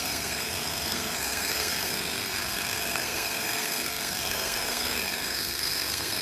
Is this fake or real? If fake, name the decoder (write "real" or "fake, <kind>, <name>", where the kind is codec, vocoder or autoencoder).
fake, codec, SNAC